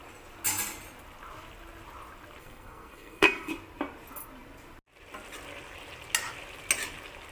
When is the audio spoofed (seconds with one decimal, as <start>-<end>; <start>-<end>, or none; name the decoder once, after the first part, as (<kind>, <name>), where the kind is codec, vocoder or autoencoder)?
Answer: 2.4-3.5 (codec, SNAC)